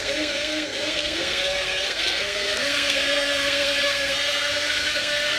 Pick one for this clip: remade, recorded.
remade